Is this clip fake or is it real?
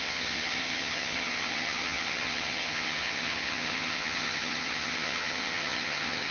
fake